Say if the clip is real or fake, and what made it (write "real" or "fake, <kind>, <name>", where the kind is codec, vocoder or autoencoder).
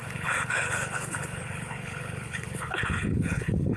fake, codec, HILCodec